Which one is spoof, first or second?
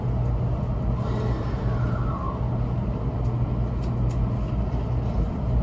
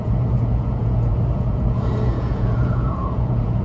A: second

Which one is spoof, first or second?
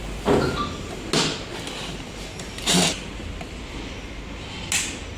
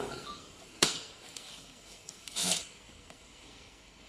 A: second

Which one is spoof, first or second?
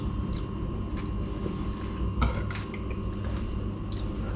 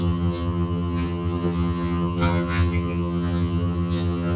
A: second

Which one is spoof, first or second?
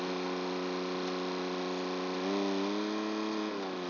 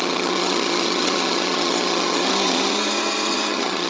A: second